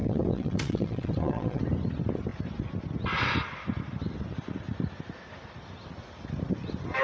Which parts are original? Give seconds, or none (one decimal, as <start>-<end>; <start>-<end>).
1.6-7.0